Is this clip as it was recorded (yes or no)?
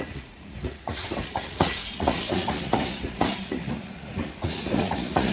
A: no